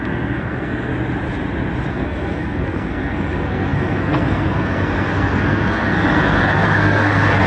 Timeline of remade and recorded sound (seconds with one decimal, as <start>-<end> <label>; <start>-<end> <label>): 0.0-0.9 remade; 0.9-1.9 recorded; 1.9-7.5 remade